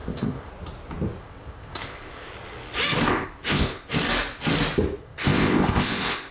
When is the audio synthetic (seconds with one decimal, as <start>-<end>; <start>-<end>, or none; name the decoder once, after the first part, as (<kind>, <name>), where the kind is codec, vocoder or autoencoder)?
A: 0.0-0.5 (codec, ZipCodec); 1.2-2.3; 3.1-3.9; 5.0-6.3